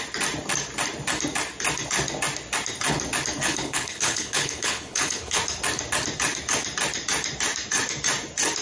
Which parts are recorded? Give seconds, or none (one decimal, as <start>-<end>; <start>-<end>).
0.0-3.4; 5.4-8.6